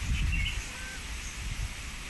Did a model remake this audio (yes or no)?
no